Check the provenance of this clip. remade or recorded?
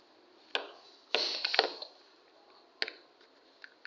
recorded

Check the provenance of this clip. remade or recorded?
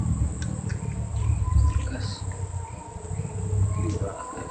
recorded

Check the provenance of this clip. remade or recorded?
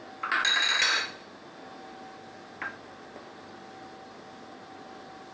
recorded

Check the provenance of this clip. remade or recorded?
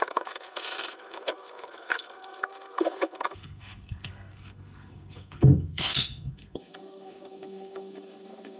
remade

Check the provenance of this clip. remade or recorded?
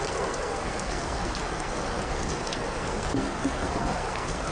remade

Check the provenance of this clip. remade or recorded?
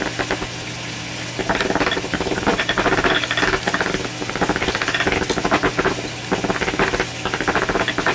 recorded